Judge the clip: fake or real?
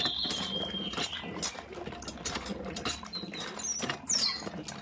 real